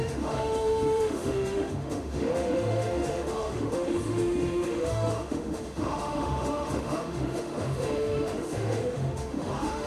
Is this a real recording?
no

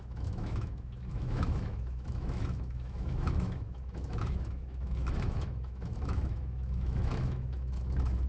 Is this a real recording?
no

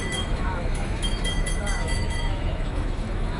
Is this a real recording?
no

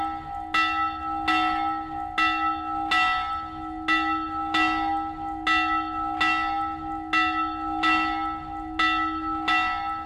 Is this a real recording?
yes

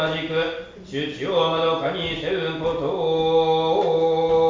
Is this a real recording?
yes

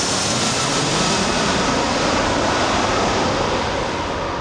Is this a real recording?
yes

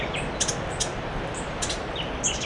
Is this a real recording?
yes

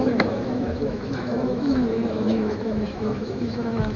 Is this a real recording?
no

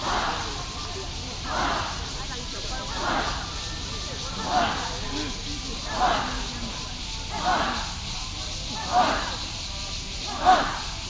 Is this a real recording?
yes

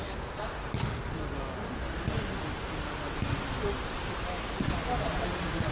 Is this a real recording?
yes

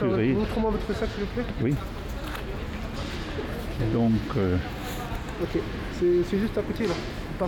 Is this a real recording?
yes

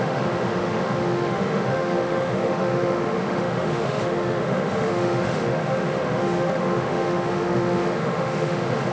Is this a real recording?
no